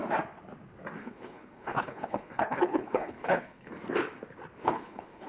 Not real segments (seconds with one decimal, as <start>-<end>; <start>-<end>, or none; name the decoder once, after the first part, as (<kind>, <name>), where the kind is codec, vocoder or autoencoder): 1.0-3.7 (codec, HILCodec); 4.6-5.3